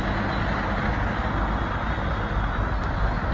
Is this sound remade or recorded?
recorded